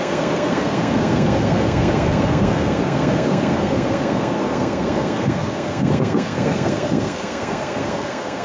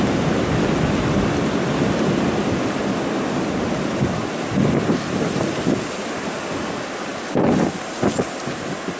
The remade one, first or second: first